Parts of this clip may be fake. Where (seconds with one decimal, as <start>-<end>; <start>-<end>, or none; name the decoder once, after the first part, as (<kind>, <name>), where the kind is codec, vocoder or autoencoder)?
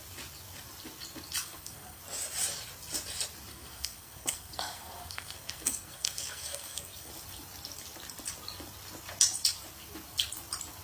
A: 1.4-2.0 (codec, SNAC); 3.5-7.1